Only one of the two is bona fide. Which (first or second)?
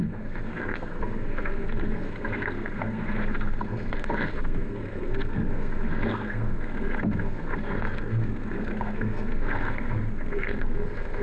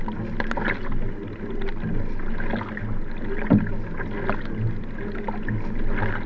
second